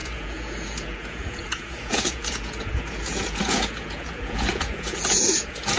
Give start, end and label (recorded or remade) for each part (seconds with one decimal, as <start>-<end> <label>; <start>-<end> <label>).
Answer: 0.0-5.8 remade